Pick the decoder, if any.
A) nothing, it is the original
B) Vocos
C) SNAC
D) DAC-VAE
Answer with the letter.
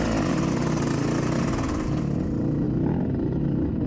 A